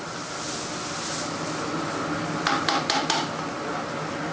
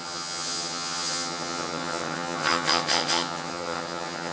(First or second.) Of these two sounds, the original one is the first